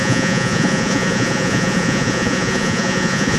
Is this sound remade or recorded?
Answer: remade